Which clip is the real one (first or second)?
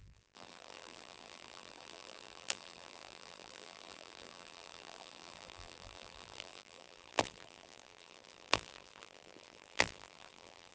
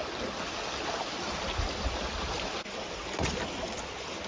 second